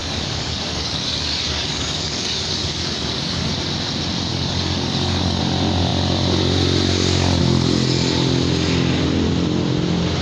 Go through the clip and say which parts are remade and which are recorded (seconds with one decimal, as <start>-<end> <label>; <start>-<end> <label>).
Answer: 0.0-3.5 remade; 3.5-4.3 recorded; 4.3-5.4 remade; 5.4-10.2 recorded